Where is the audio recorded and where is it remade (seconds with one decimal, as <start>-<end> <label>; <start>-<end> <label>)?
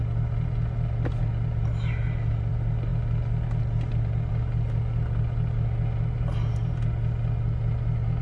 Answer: 0.0-8.2 recorded